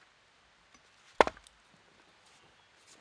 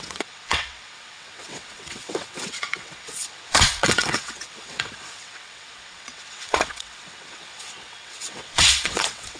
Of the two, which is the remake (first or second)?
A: second